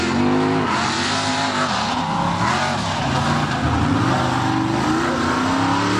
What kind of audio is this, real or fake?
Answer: real